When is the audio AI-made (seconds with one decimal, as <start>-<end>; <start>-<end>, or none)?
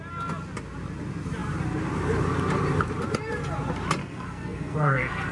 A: 4.0-5.3